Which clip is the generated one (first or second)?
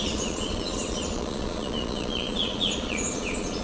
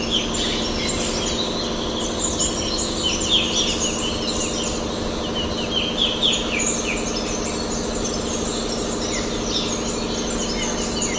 first